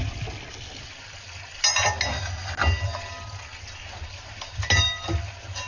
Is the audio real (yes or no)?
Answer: yes